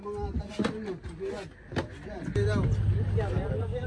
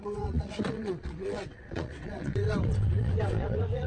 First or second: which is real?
first